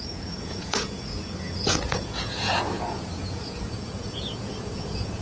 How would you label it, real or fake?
fake